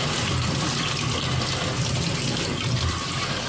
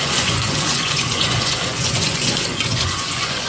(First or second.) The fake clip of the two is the second